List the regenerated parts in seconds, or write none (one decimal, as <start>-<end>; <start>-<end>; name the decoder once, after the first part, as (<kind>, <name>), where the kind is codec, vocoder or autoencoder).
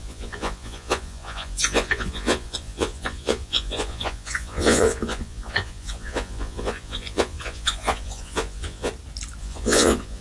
0.0-8.9 (vocoder, Vocos); 9.4-10.2